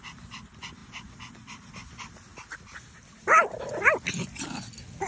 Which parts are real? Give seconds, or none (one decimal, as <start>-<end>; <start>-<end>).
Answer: 0.0-5.1